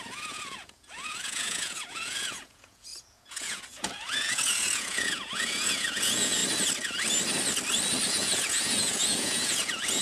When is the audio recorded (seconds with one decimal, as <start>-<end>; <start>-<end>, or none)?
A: 6.4-8.1